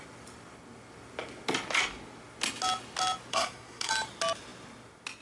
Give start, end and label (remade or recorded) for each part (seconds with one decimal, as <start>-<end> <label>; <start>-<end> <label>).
0.0-3.3 recorded; 3.3-3.9 remade; 3.9-5.2 recorded